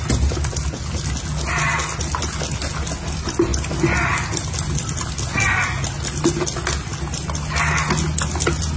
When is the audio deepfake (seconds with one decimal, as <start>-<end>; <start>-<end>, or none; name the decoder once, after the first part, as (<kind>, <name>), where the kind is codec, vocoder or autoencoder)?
none